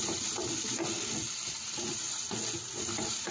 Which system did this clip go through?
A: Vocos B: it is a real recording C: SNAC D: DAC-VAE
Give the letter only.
B